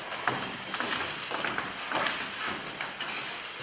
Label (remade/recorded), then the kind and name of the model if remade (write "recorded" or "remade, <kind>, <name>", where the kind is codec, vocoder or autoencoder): recorded